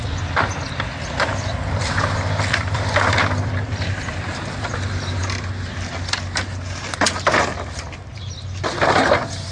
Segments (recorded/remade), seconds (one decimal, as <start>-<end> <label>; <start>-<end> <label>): 0.0-5.2 remade; 5.2-7.7 recorded; 7.7-9.5 remade